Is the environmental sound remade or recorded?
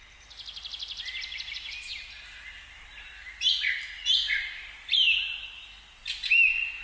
recorded